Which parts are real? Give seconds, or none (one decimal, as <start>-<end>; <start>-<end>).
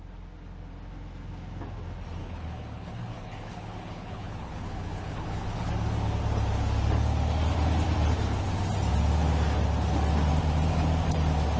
0.0-2.2; 5.7-11.6